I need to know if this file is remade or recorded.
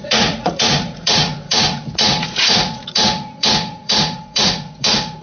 remade